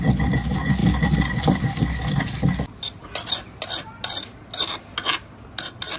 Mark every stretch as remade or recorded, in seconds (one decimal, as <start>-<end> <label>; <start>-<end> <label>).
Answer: 0.0-6.0 recorded